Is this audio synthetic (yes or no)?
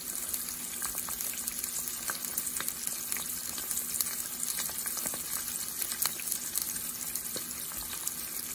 no